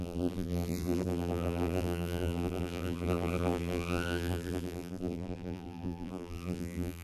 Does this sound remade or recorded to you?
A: remade